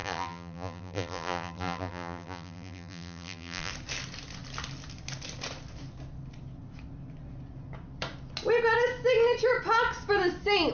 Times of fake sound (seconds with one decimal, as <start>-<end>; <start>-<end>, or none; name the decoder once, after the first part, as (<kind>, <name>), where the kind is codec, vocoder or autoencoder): 0.0-3.7 (vocoder, BigVGAN v2)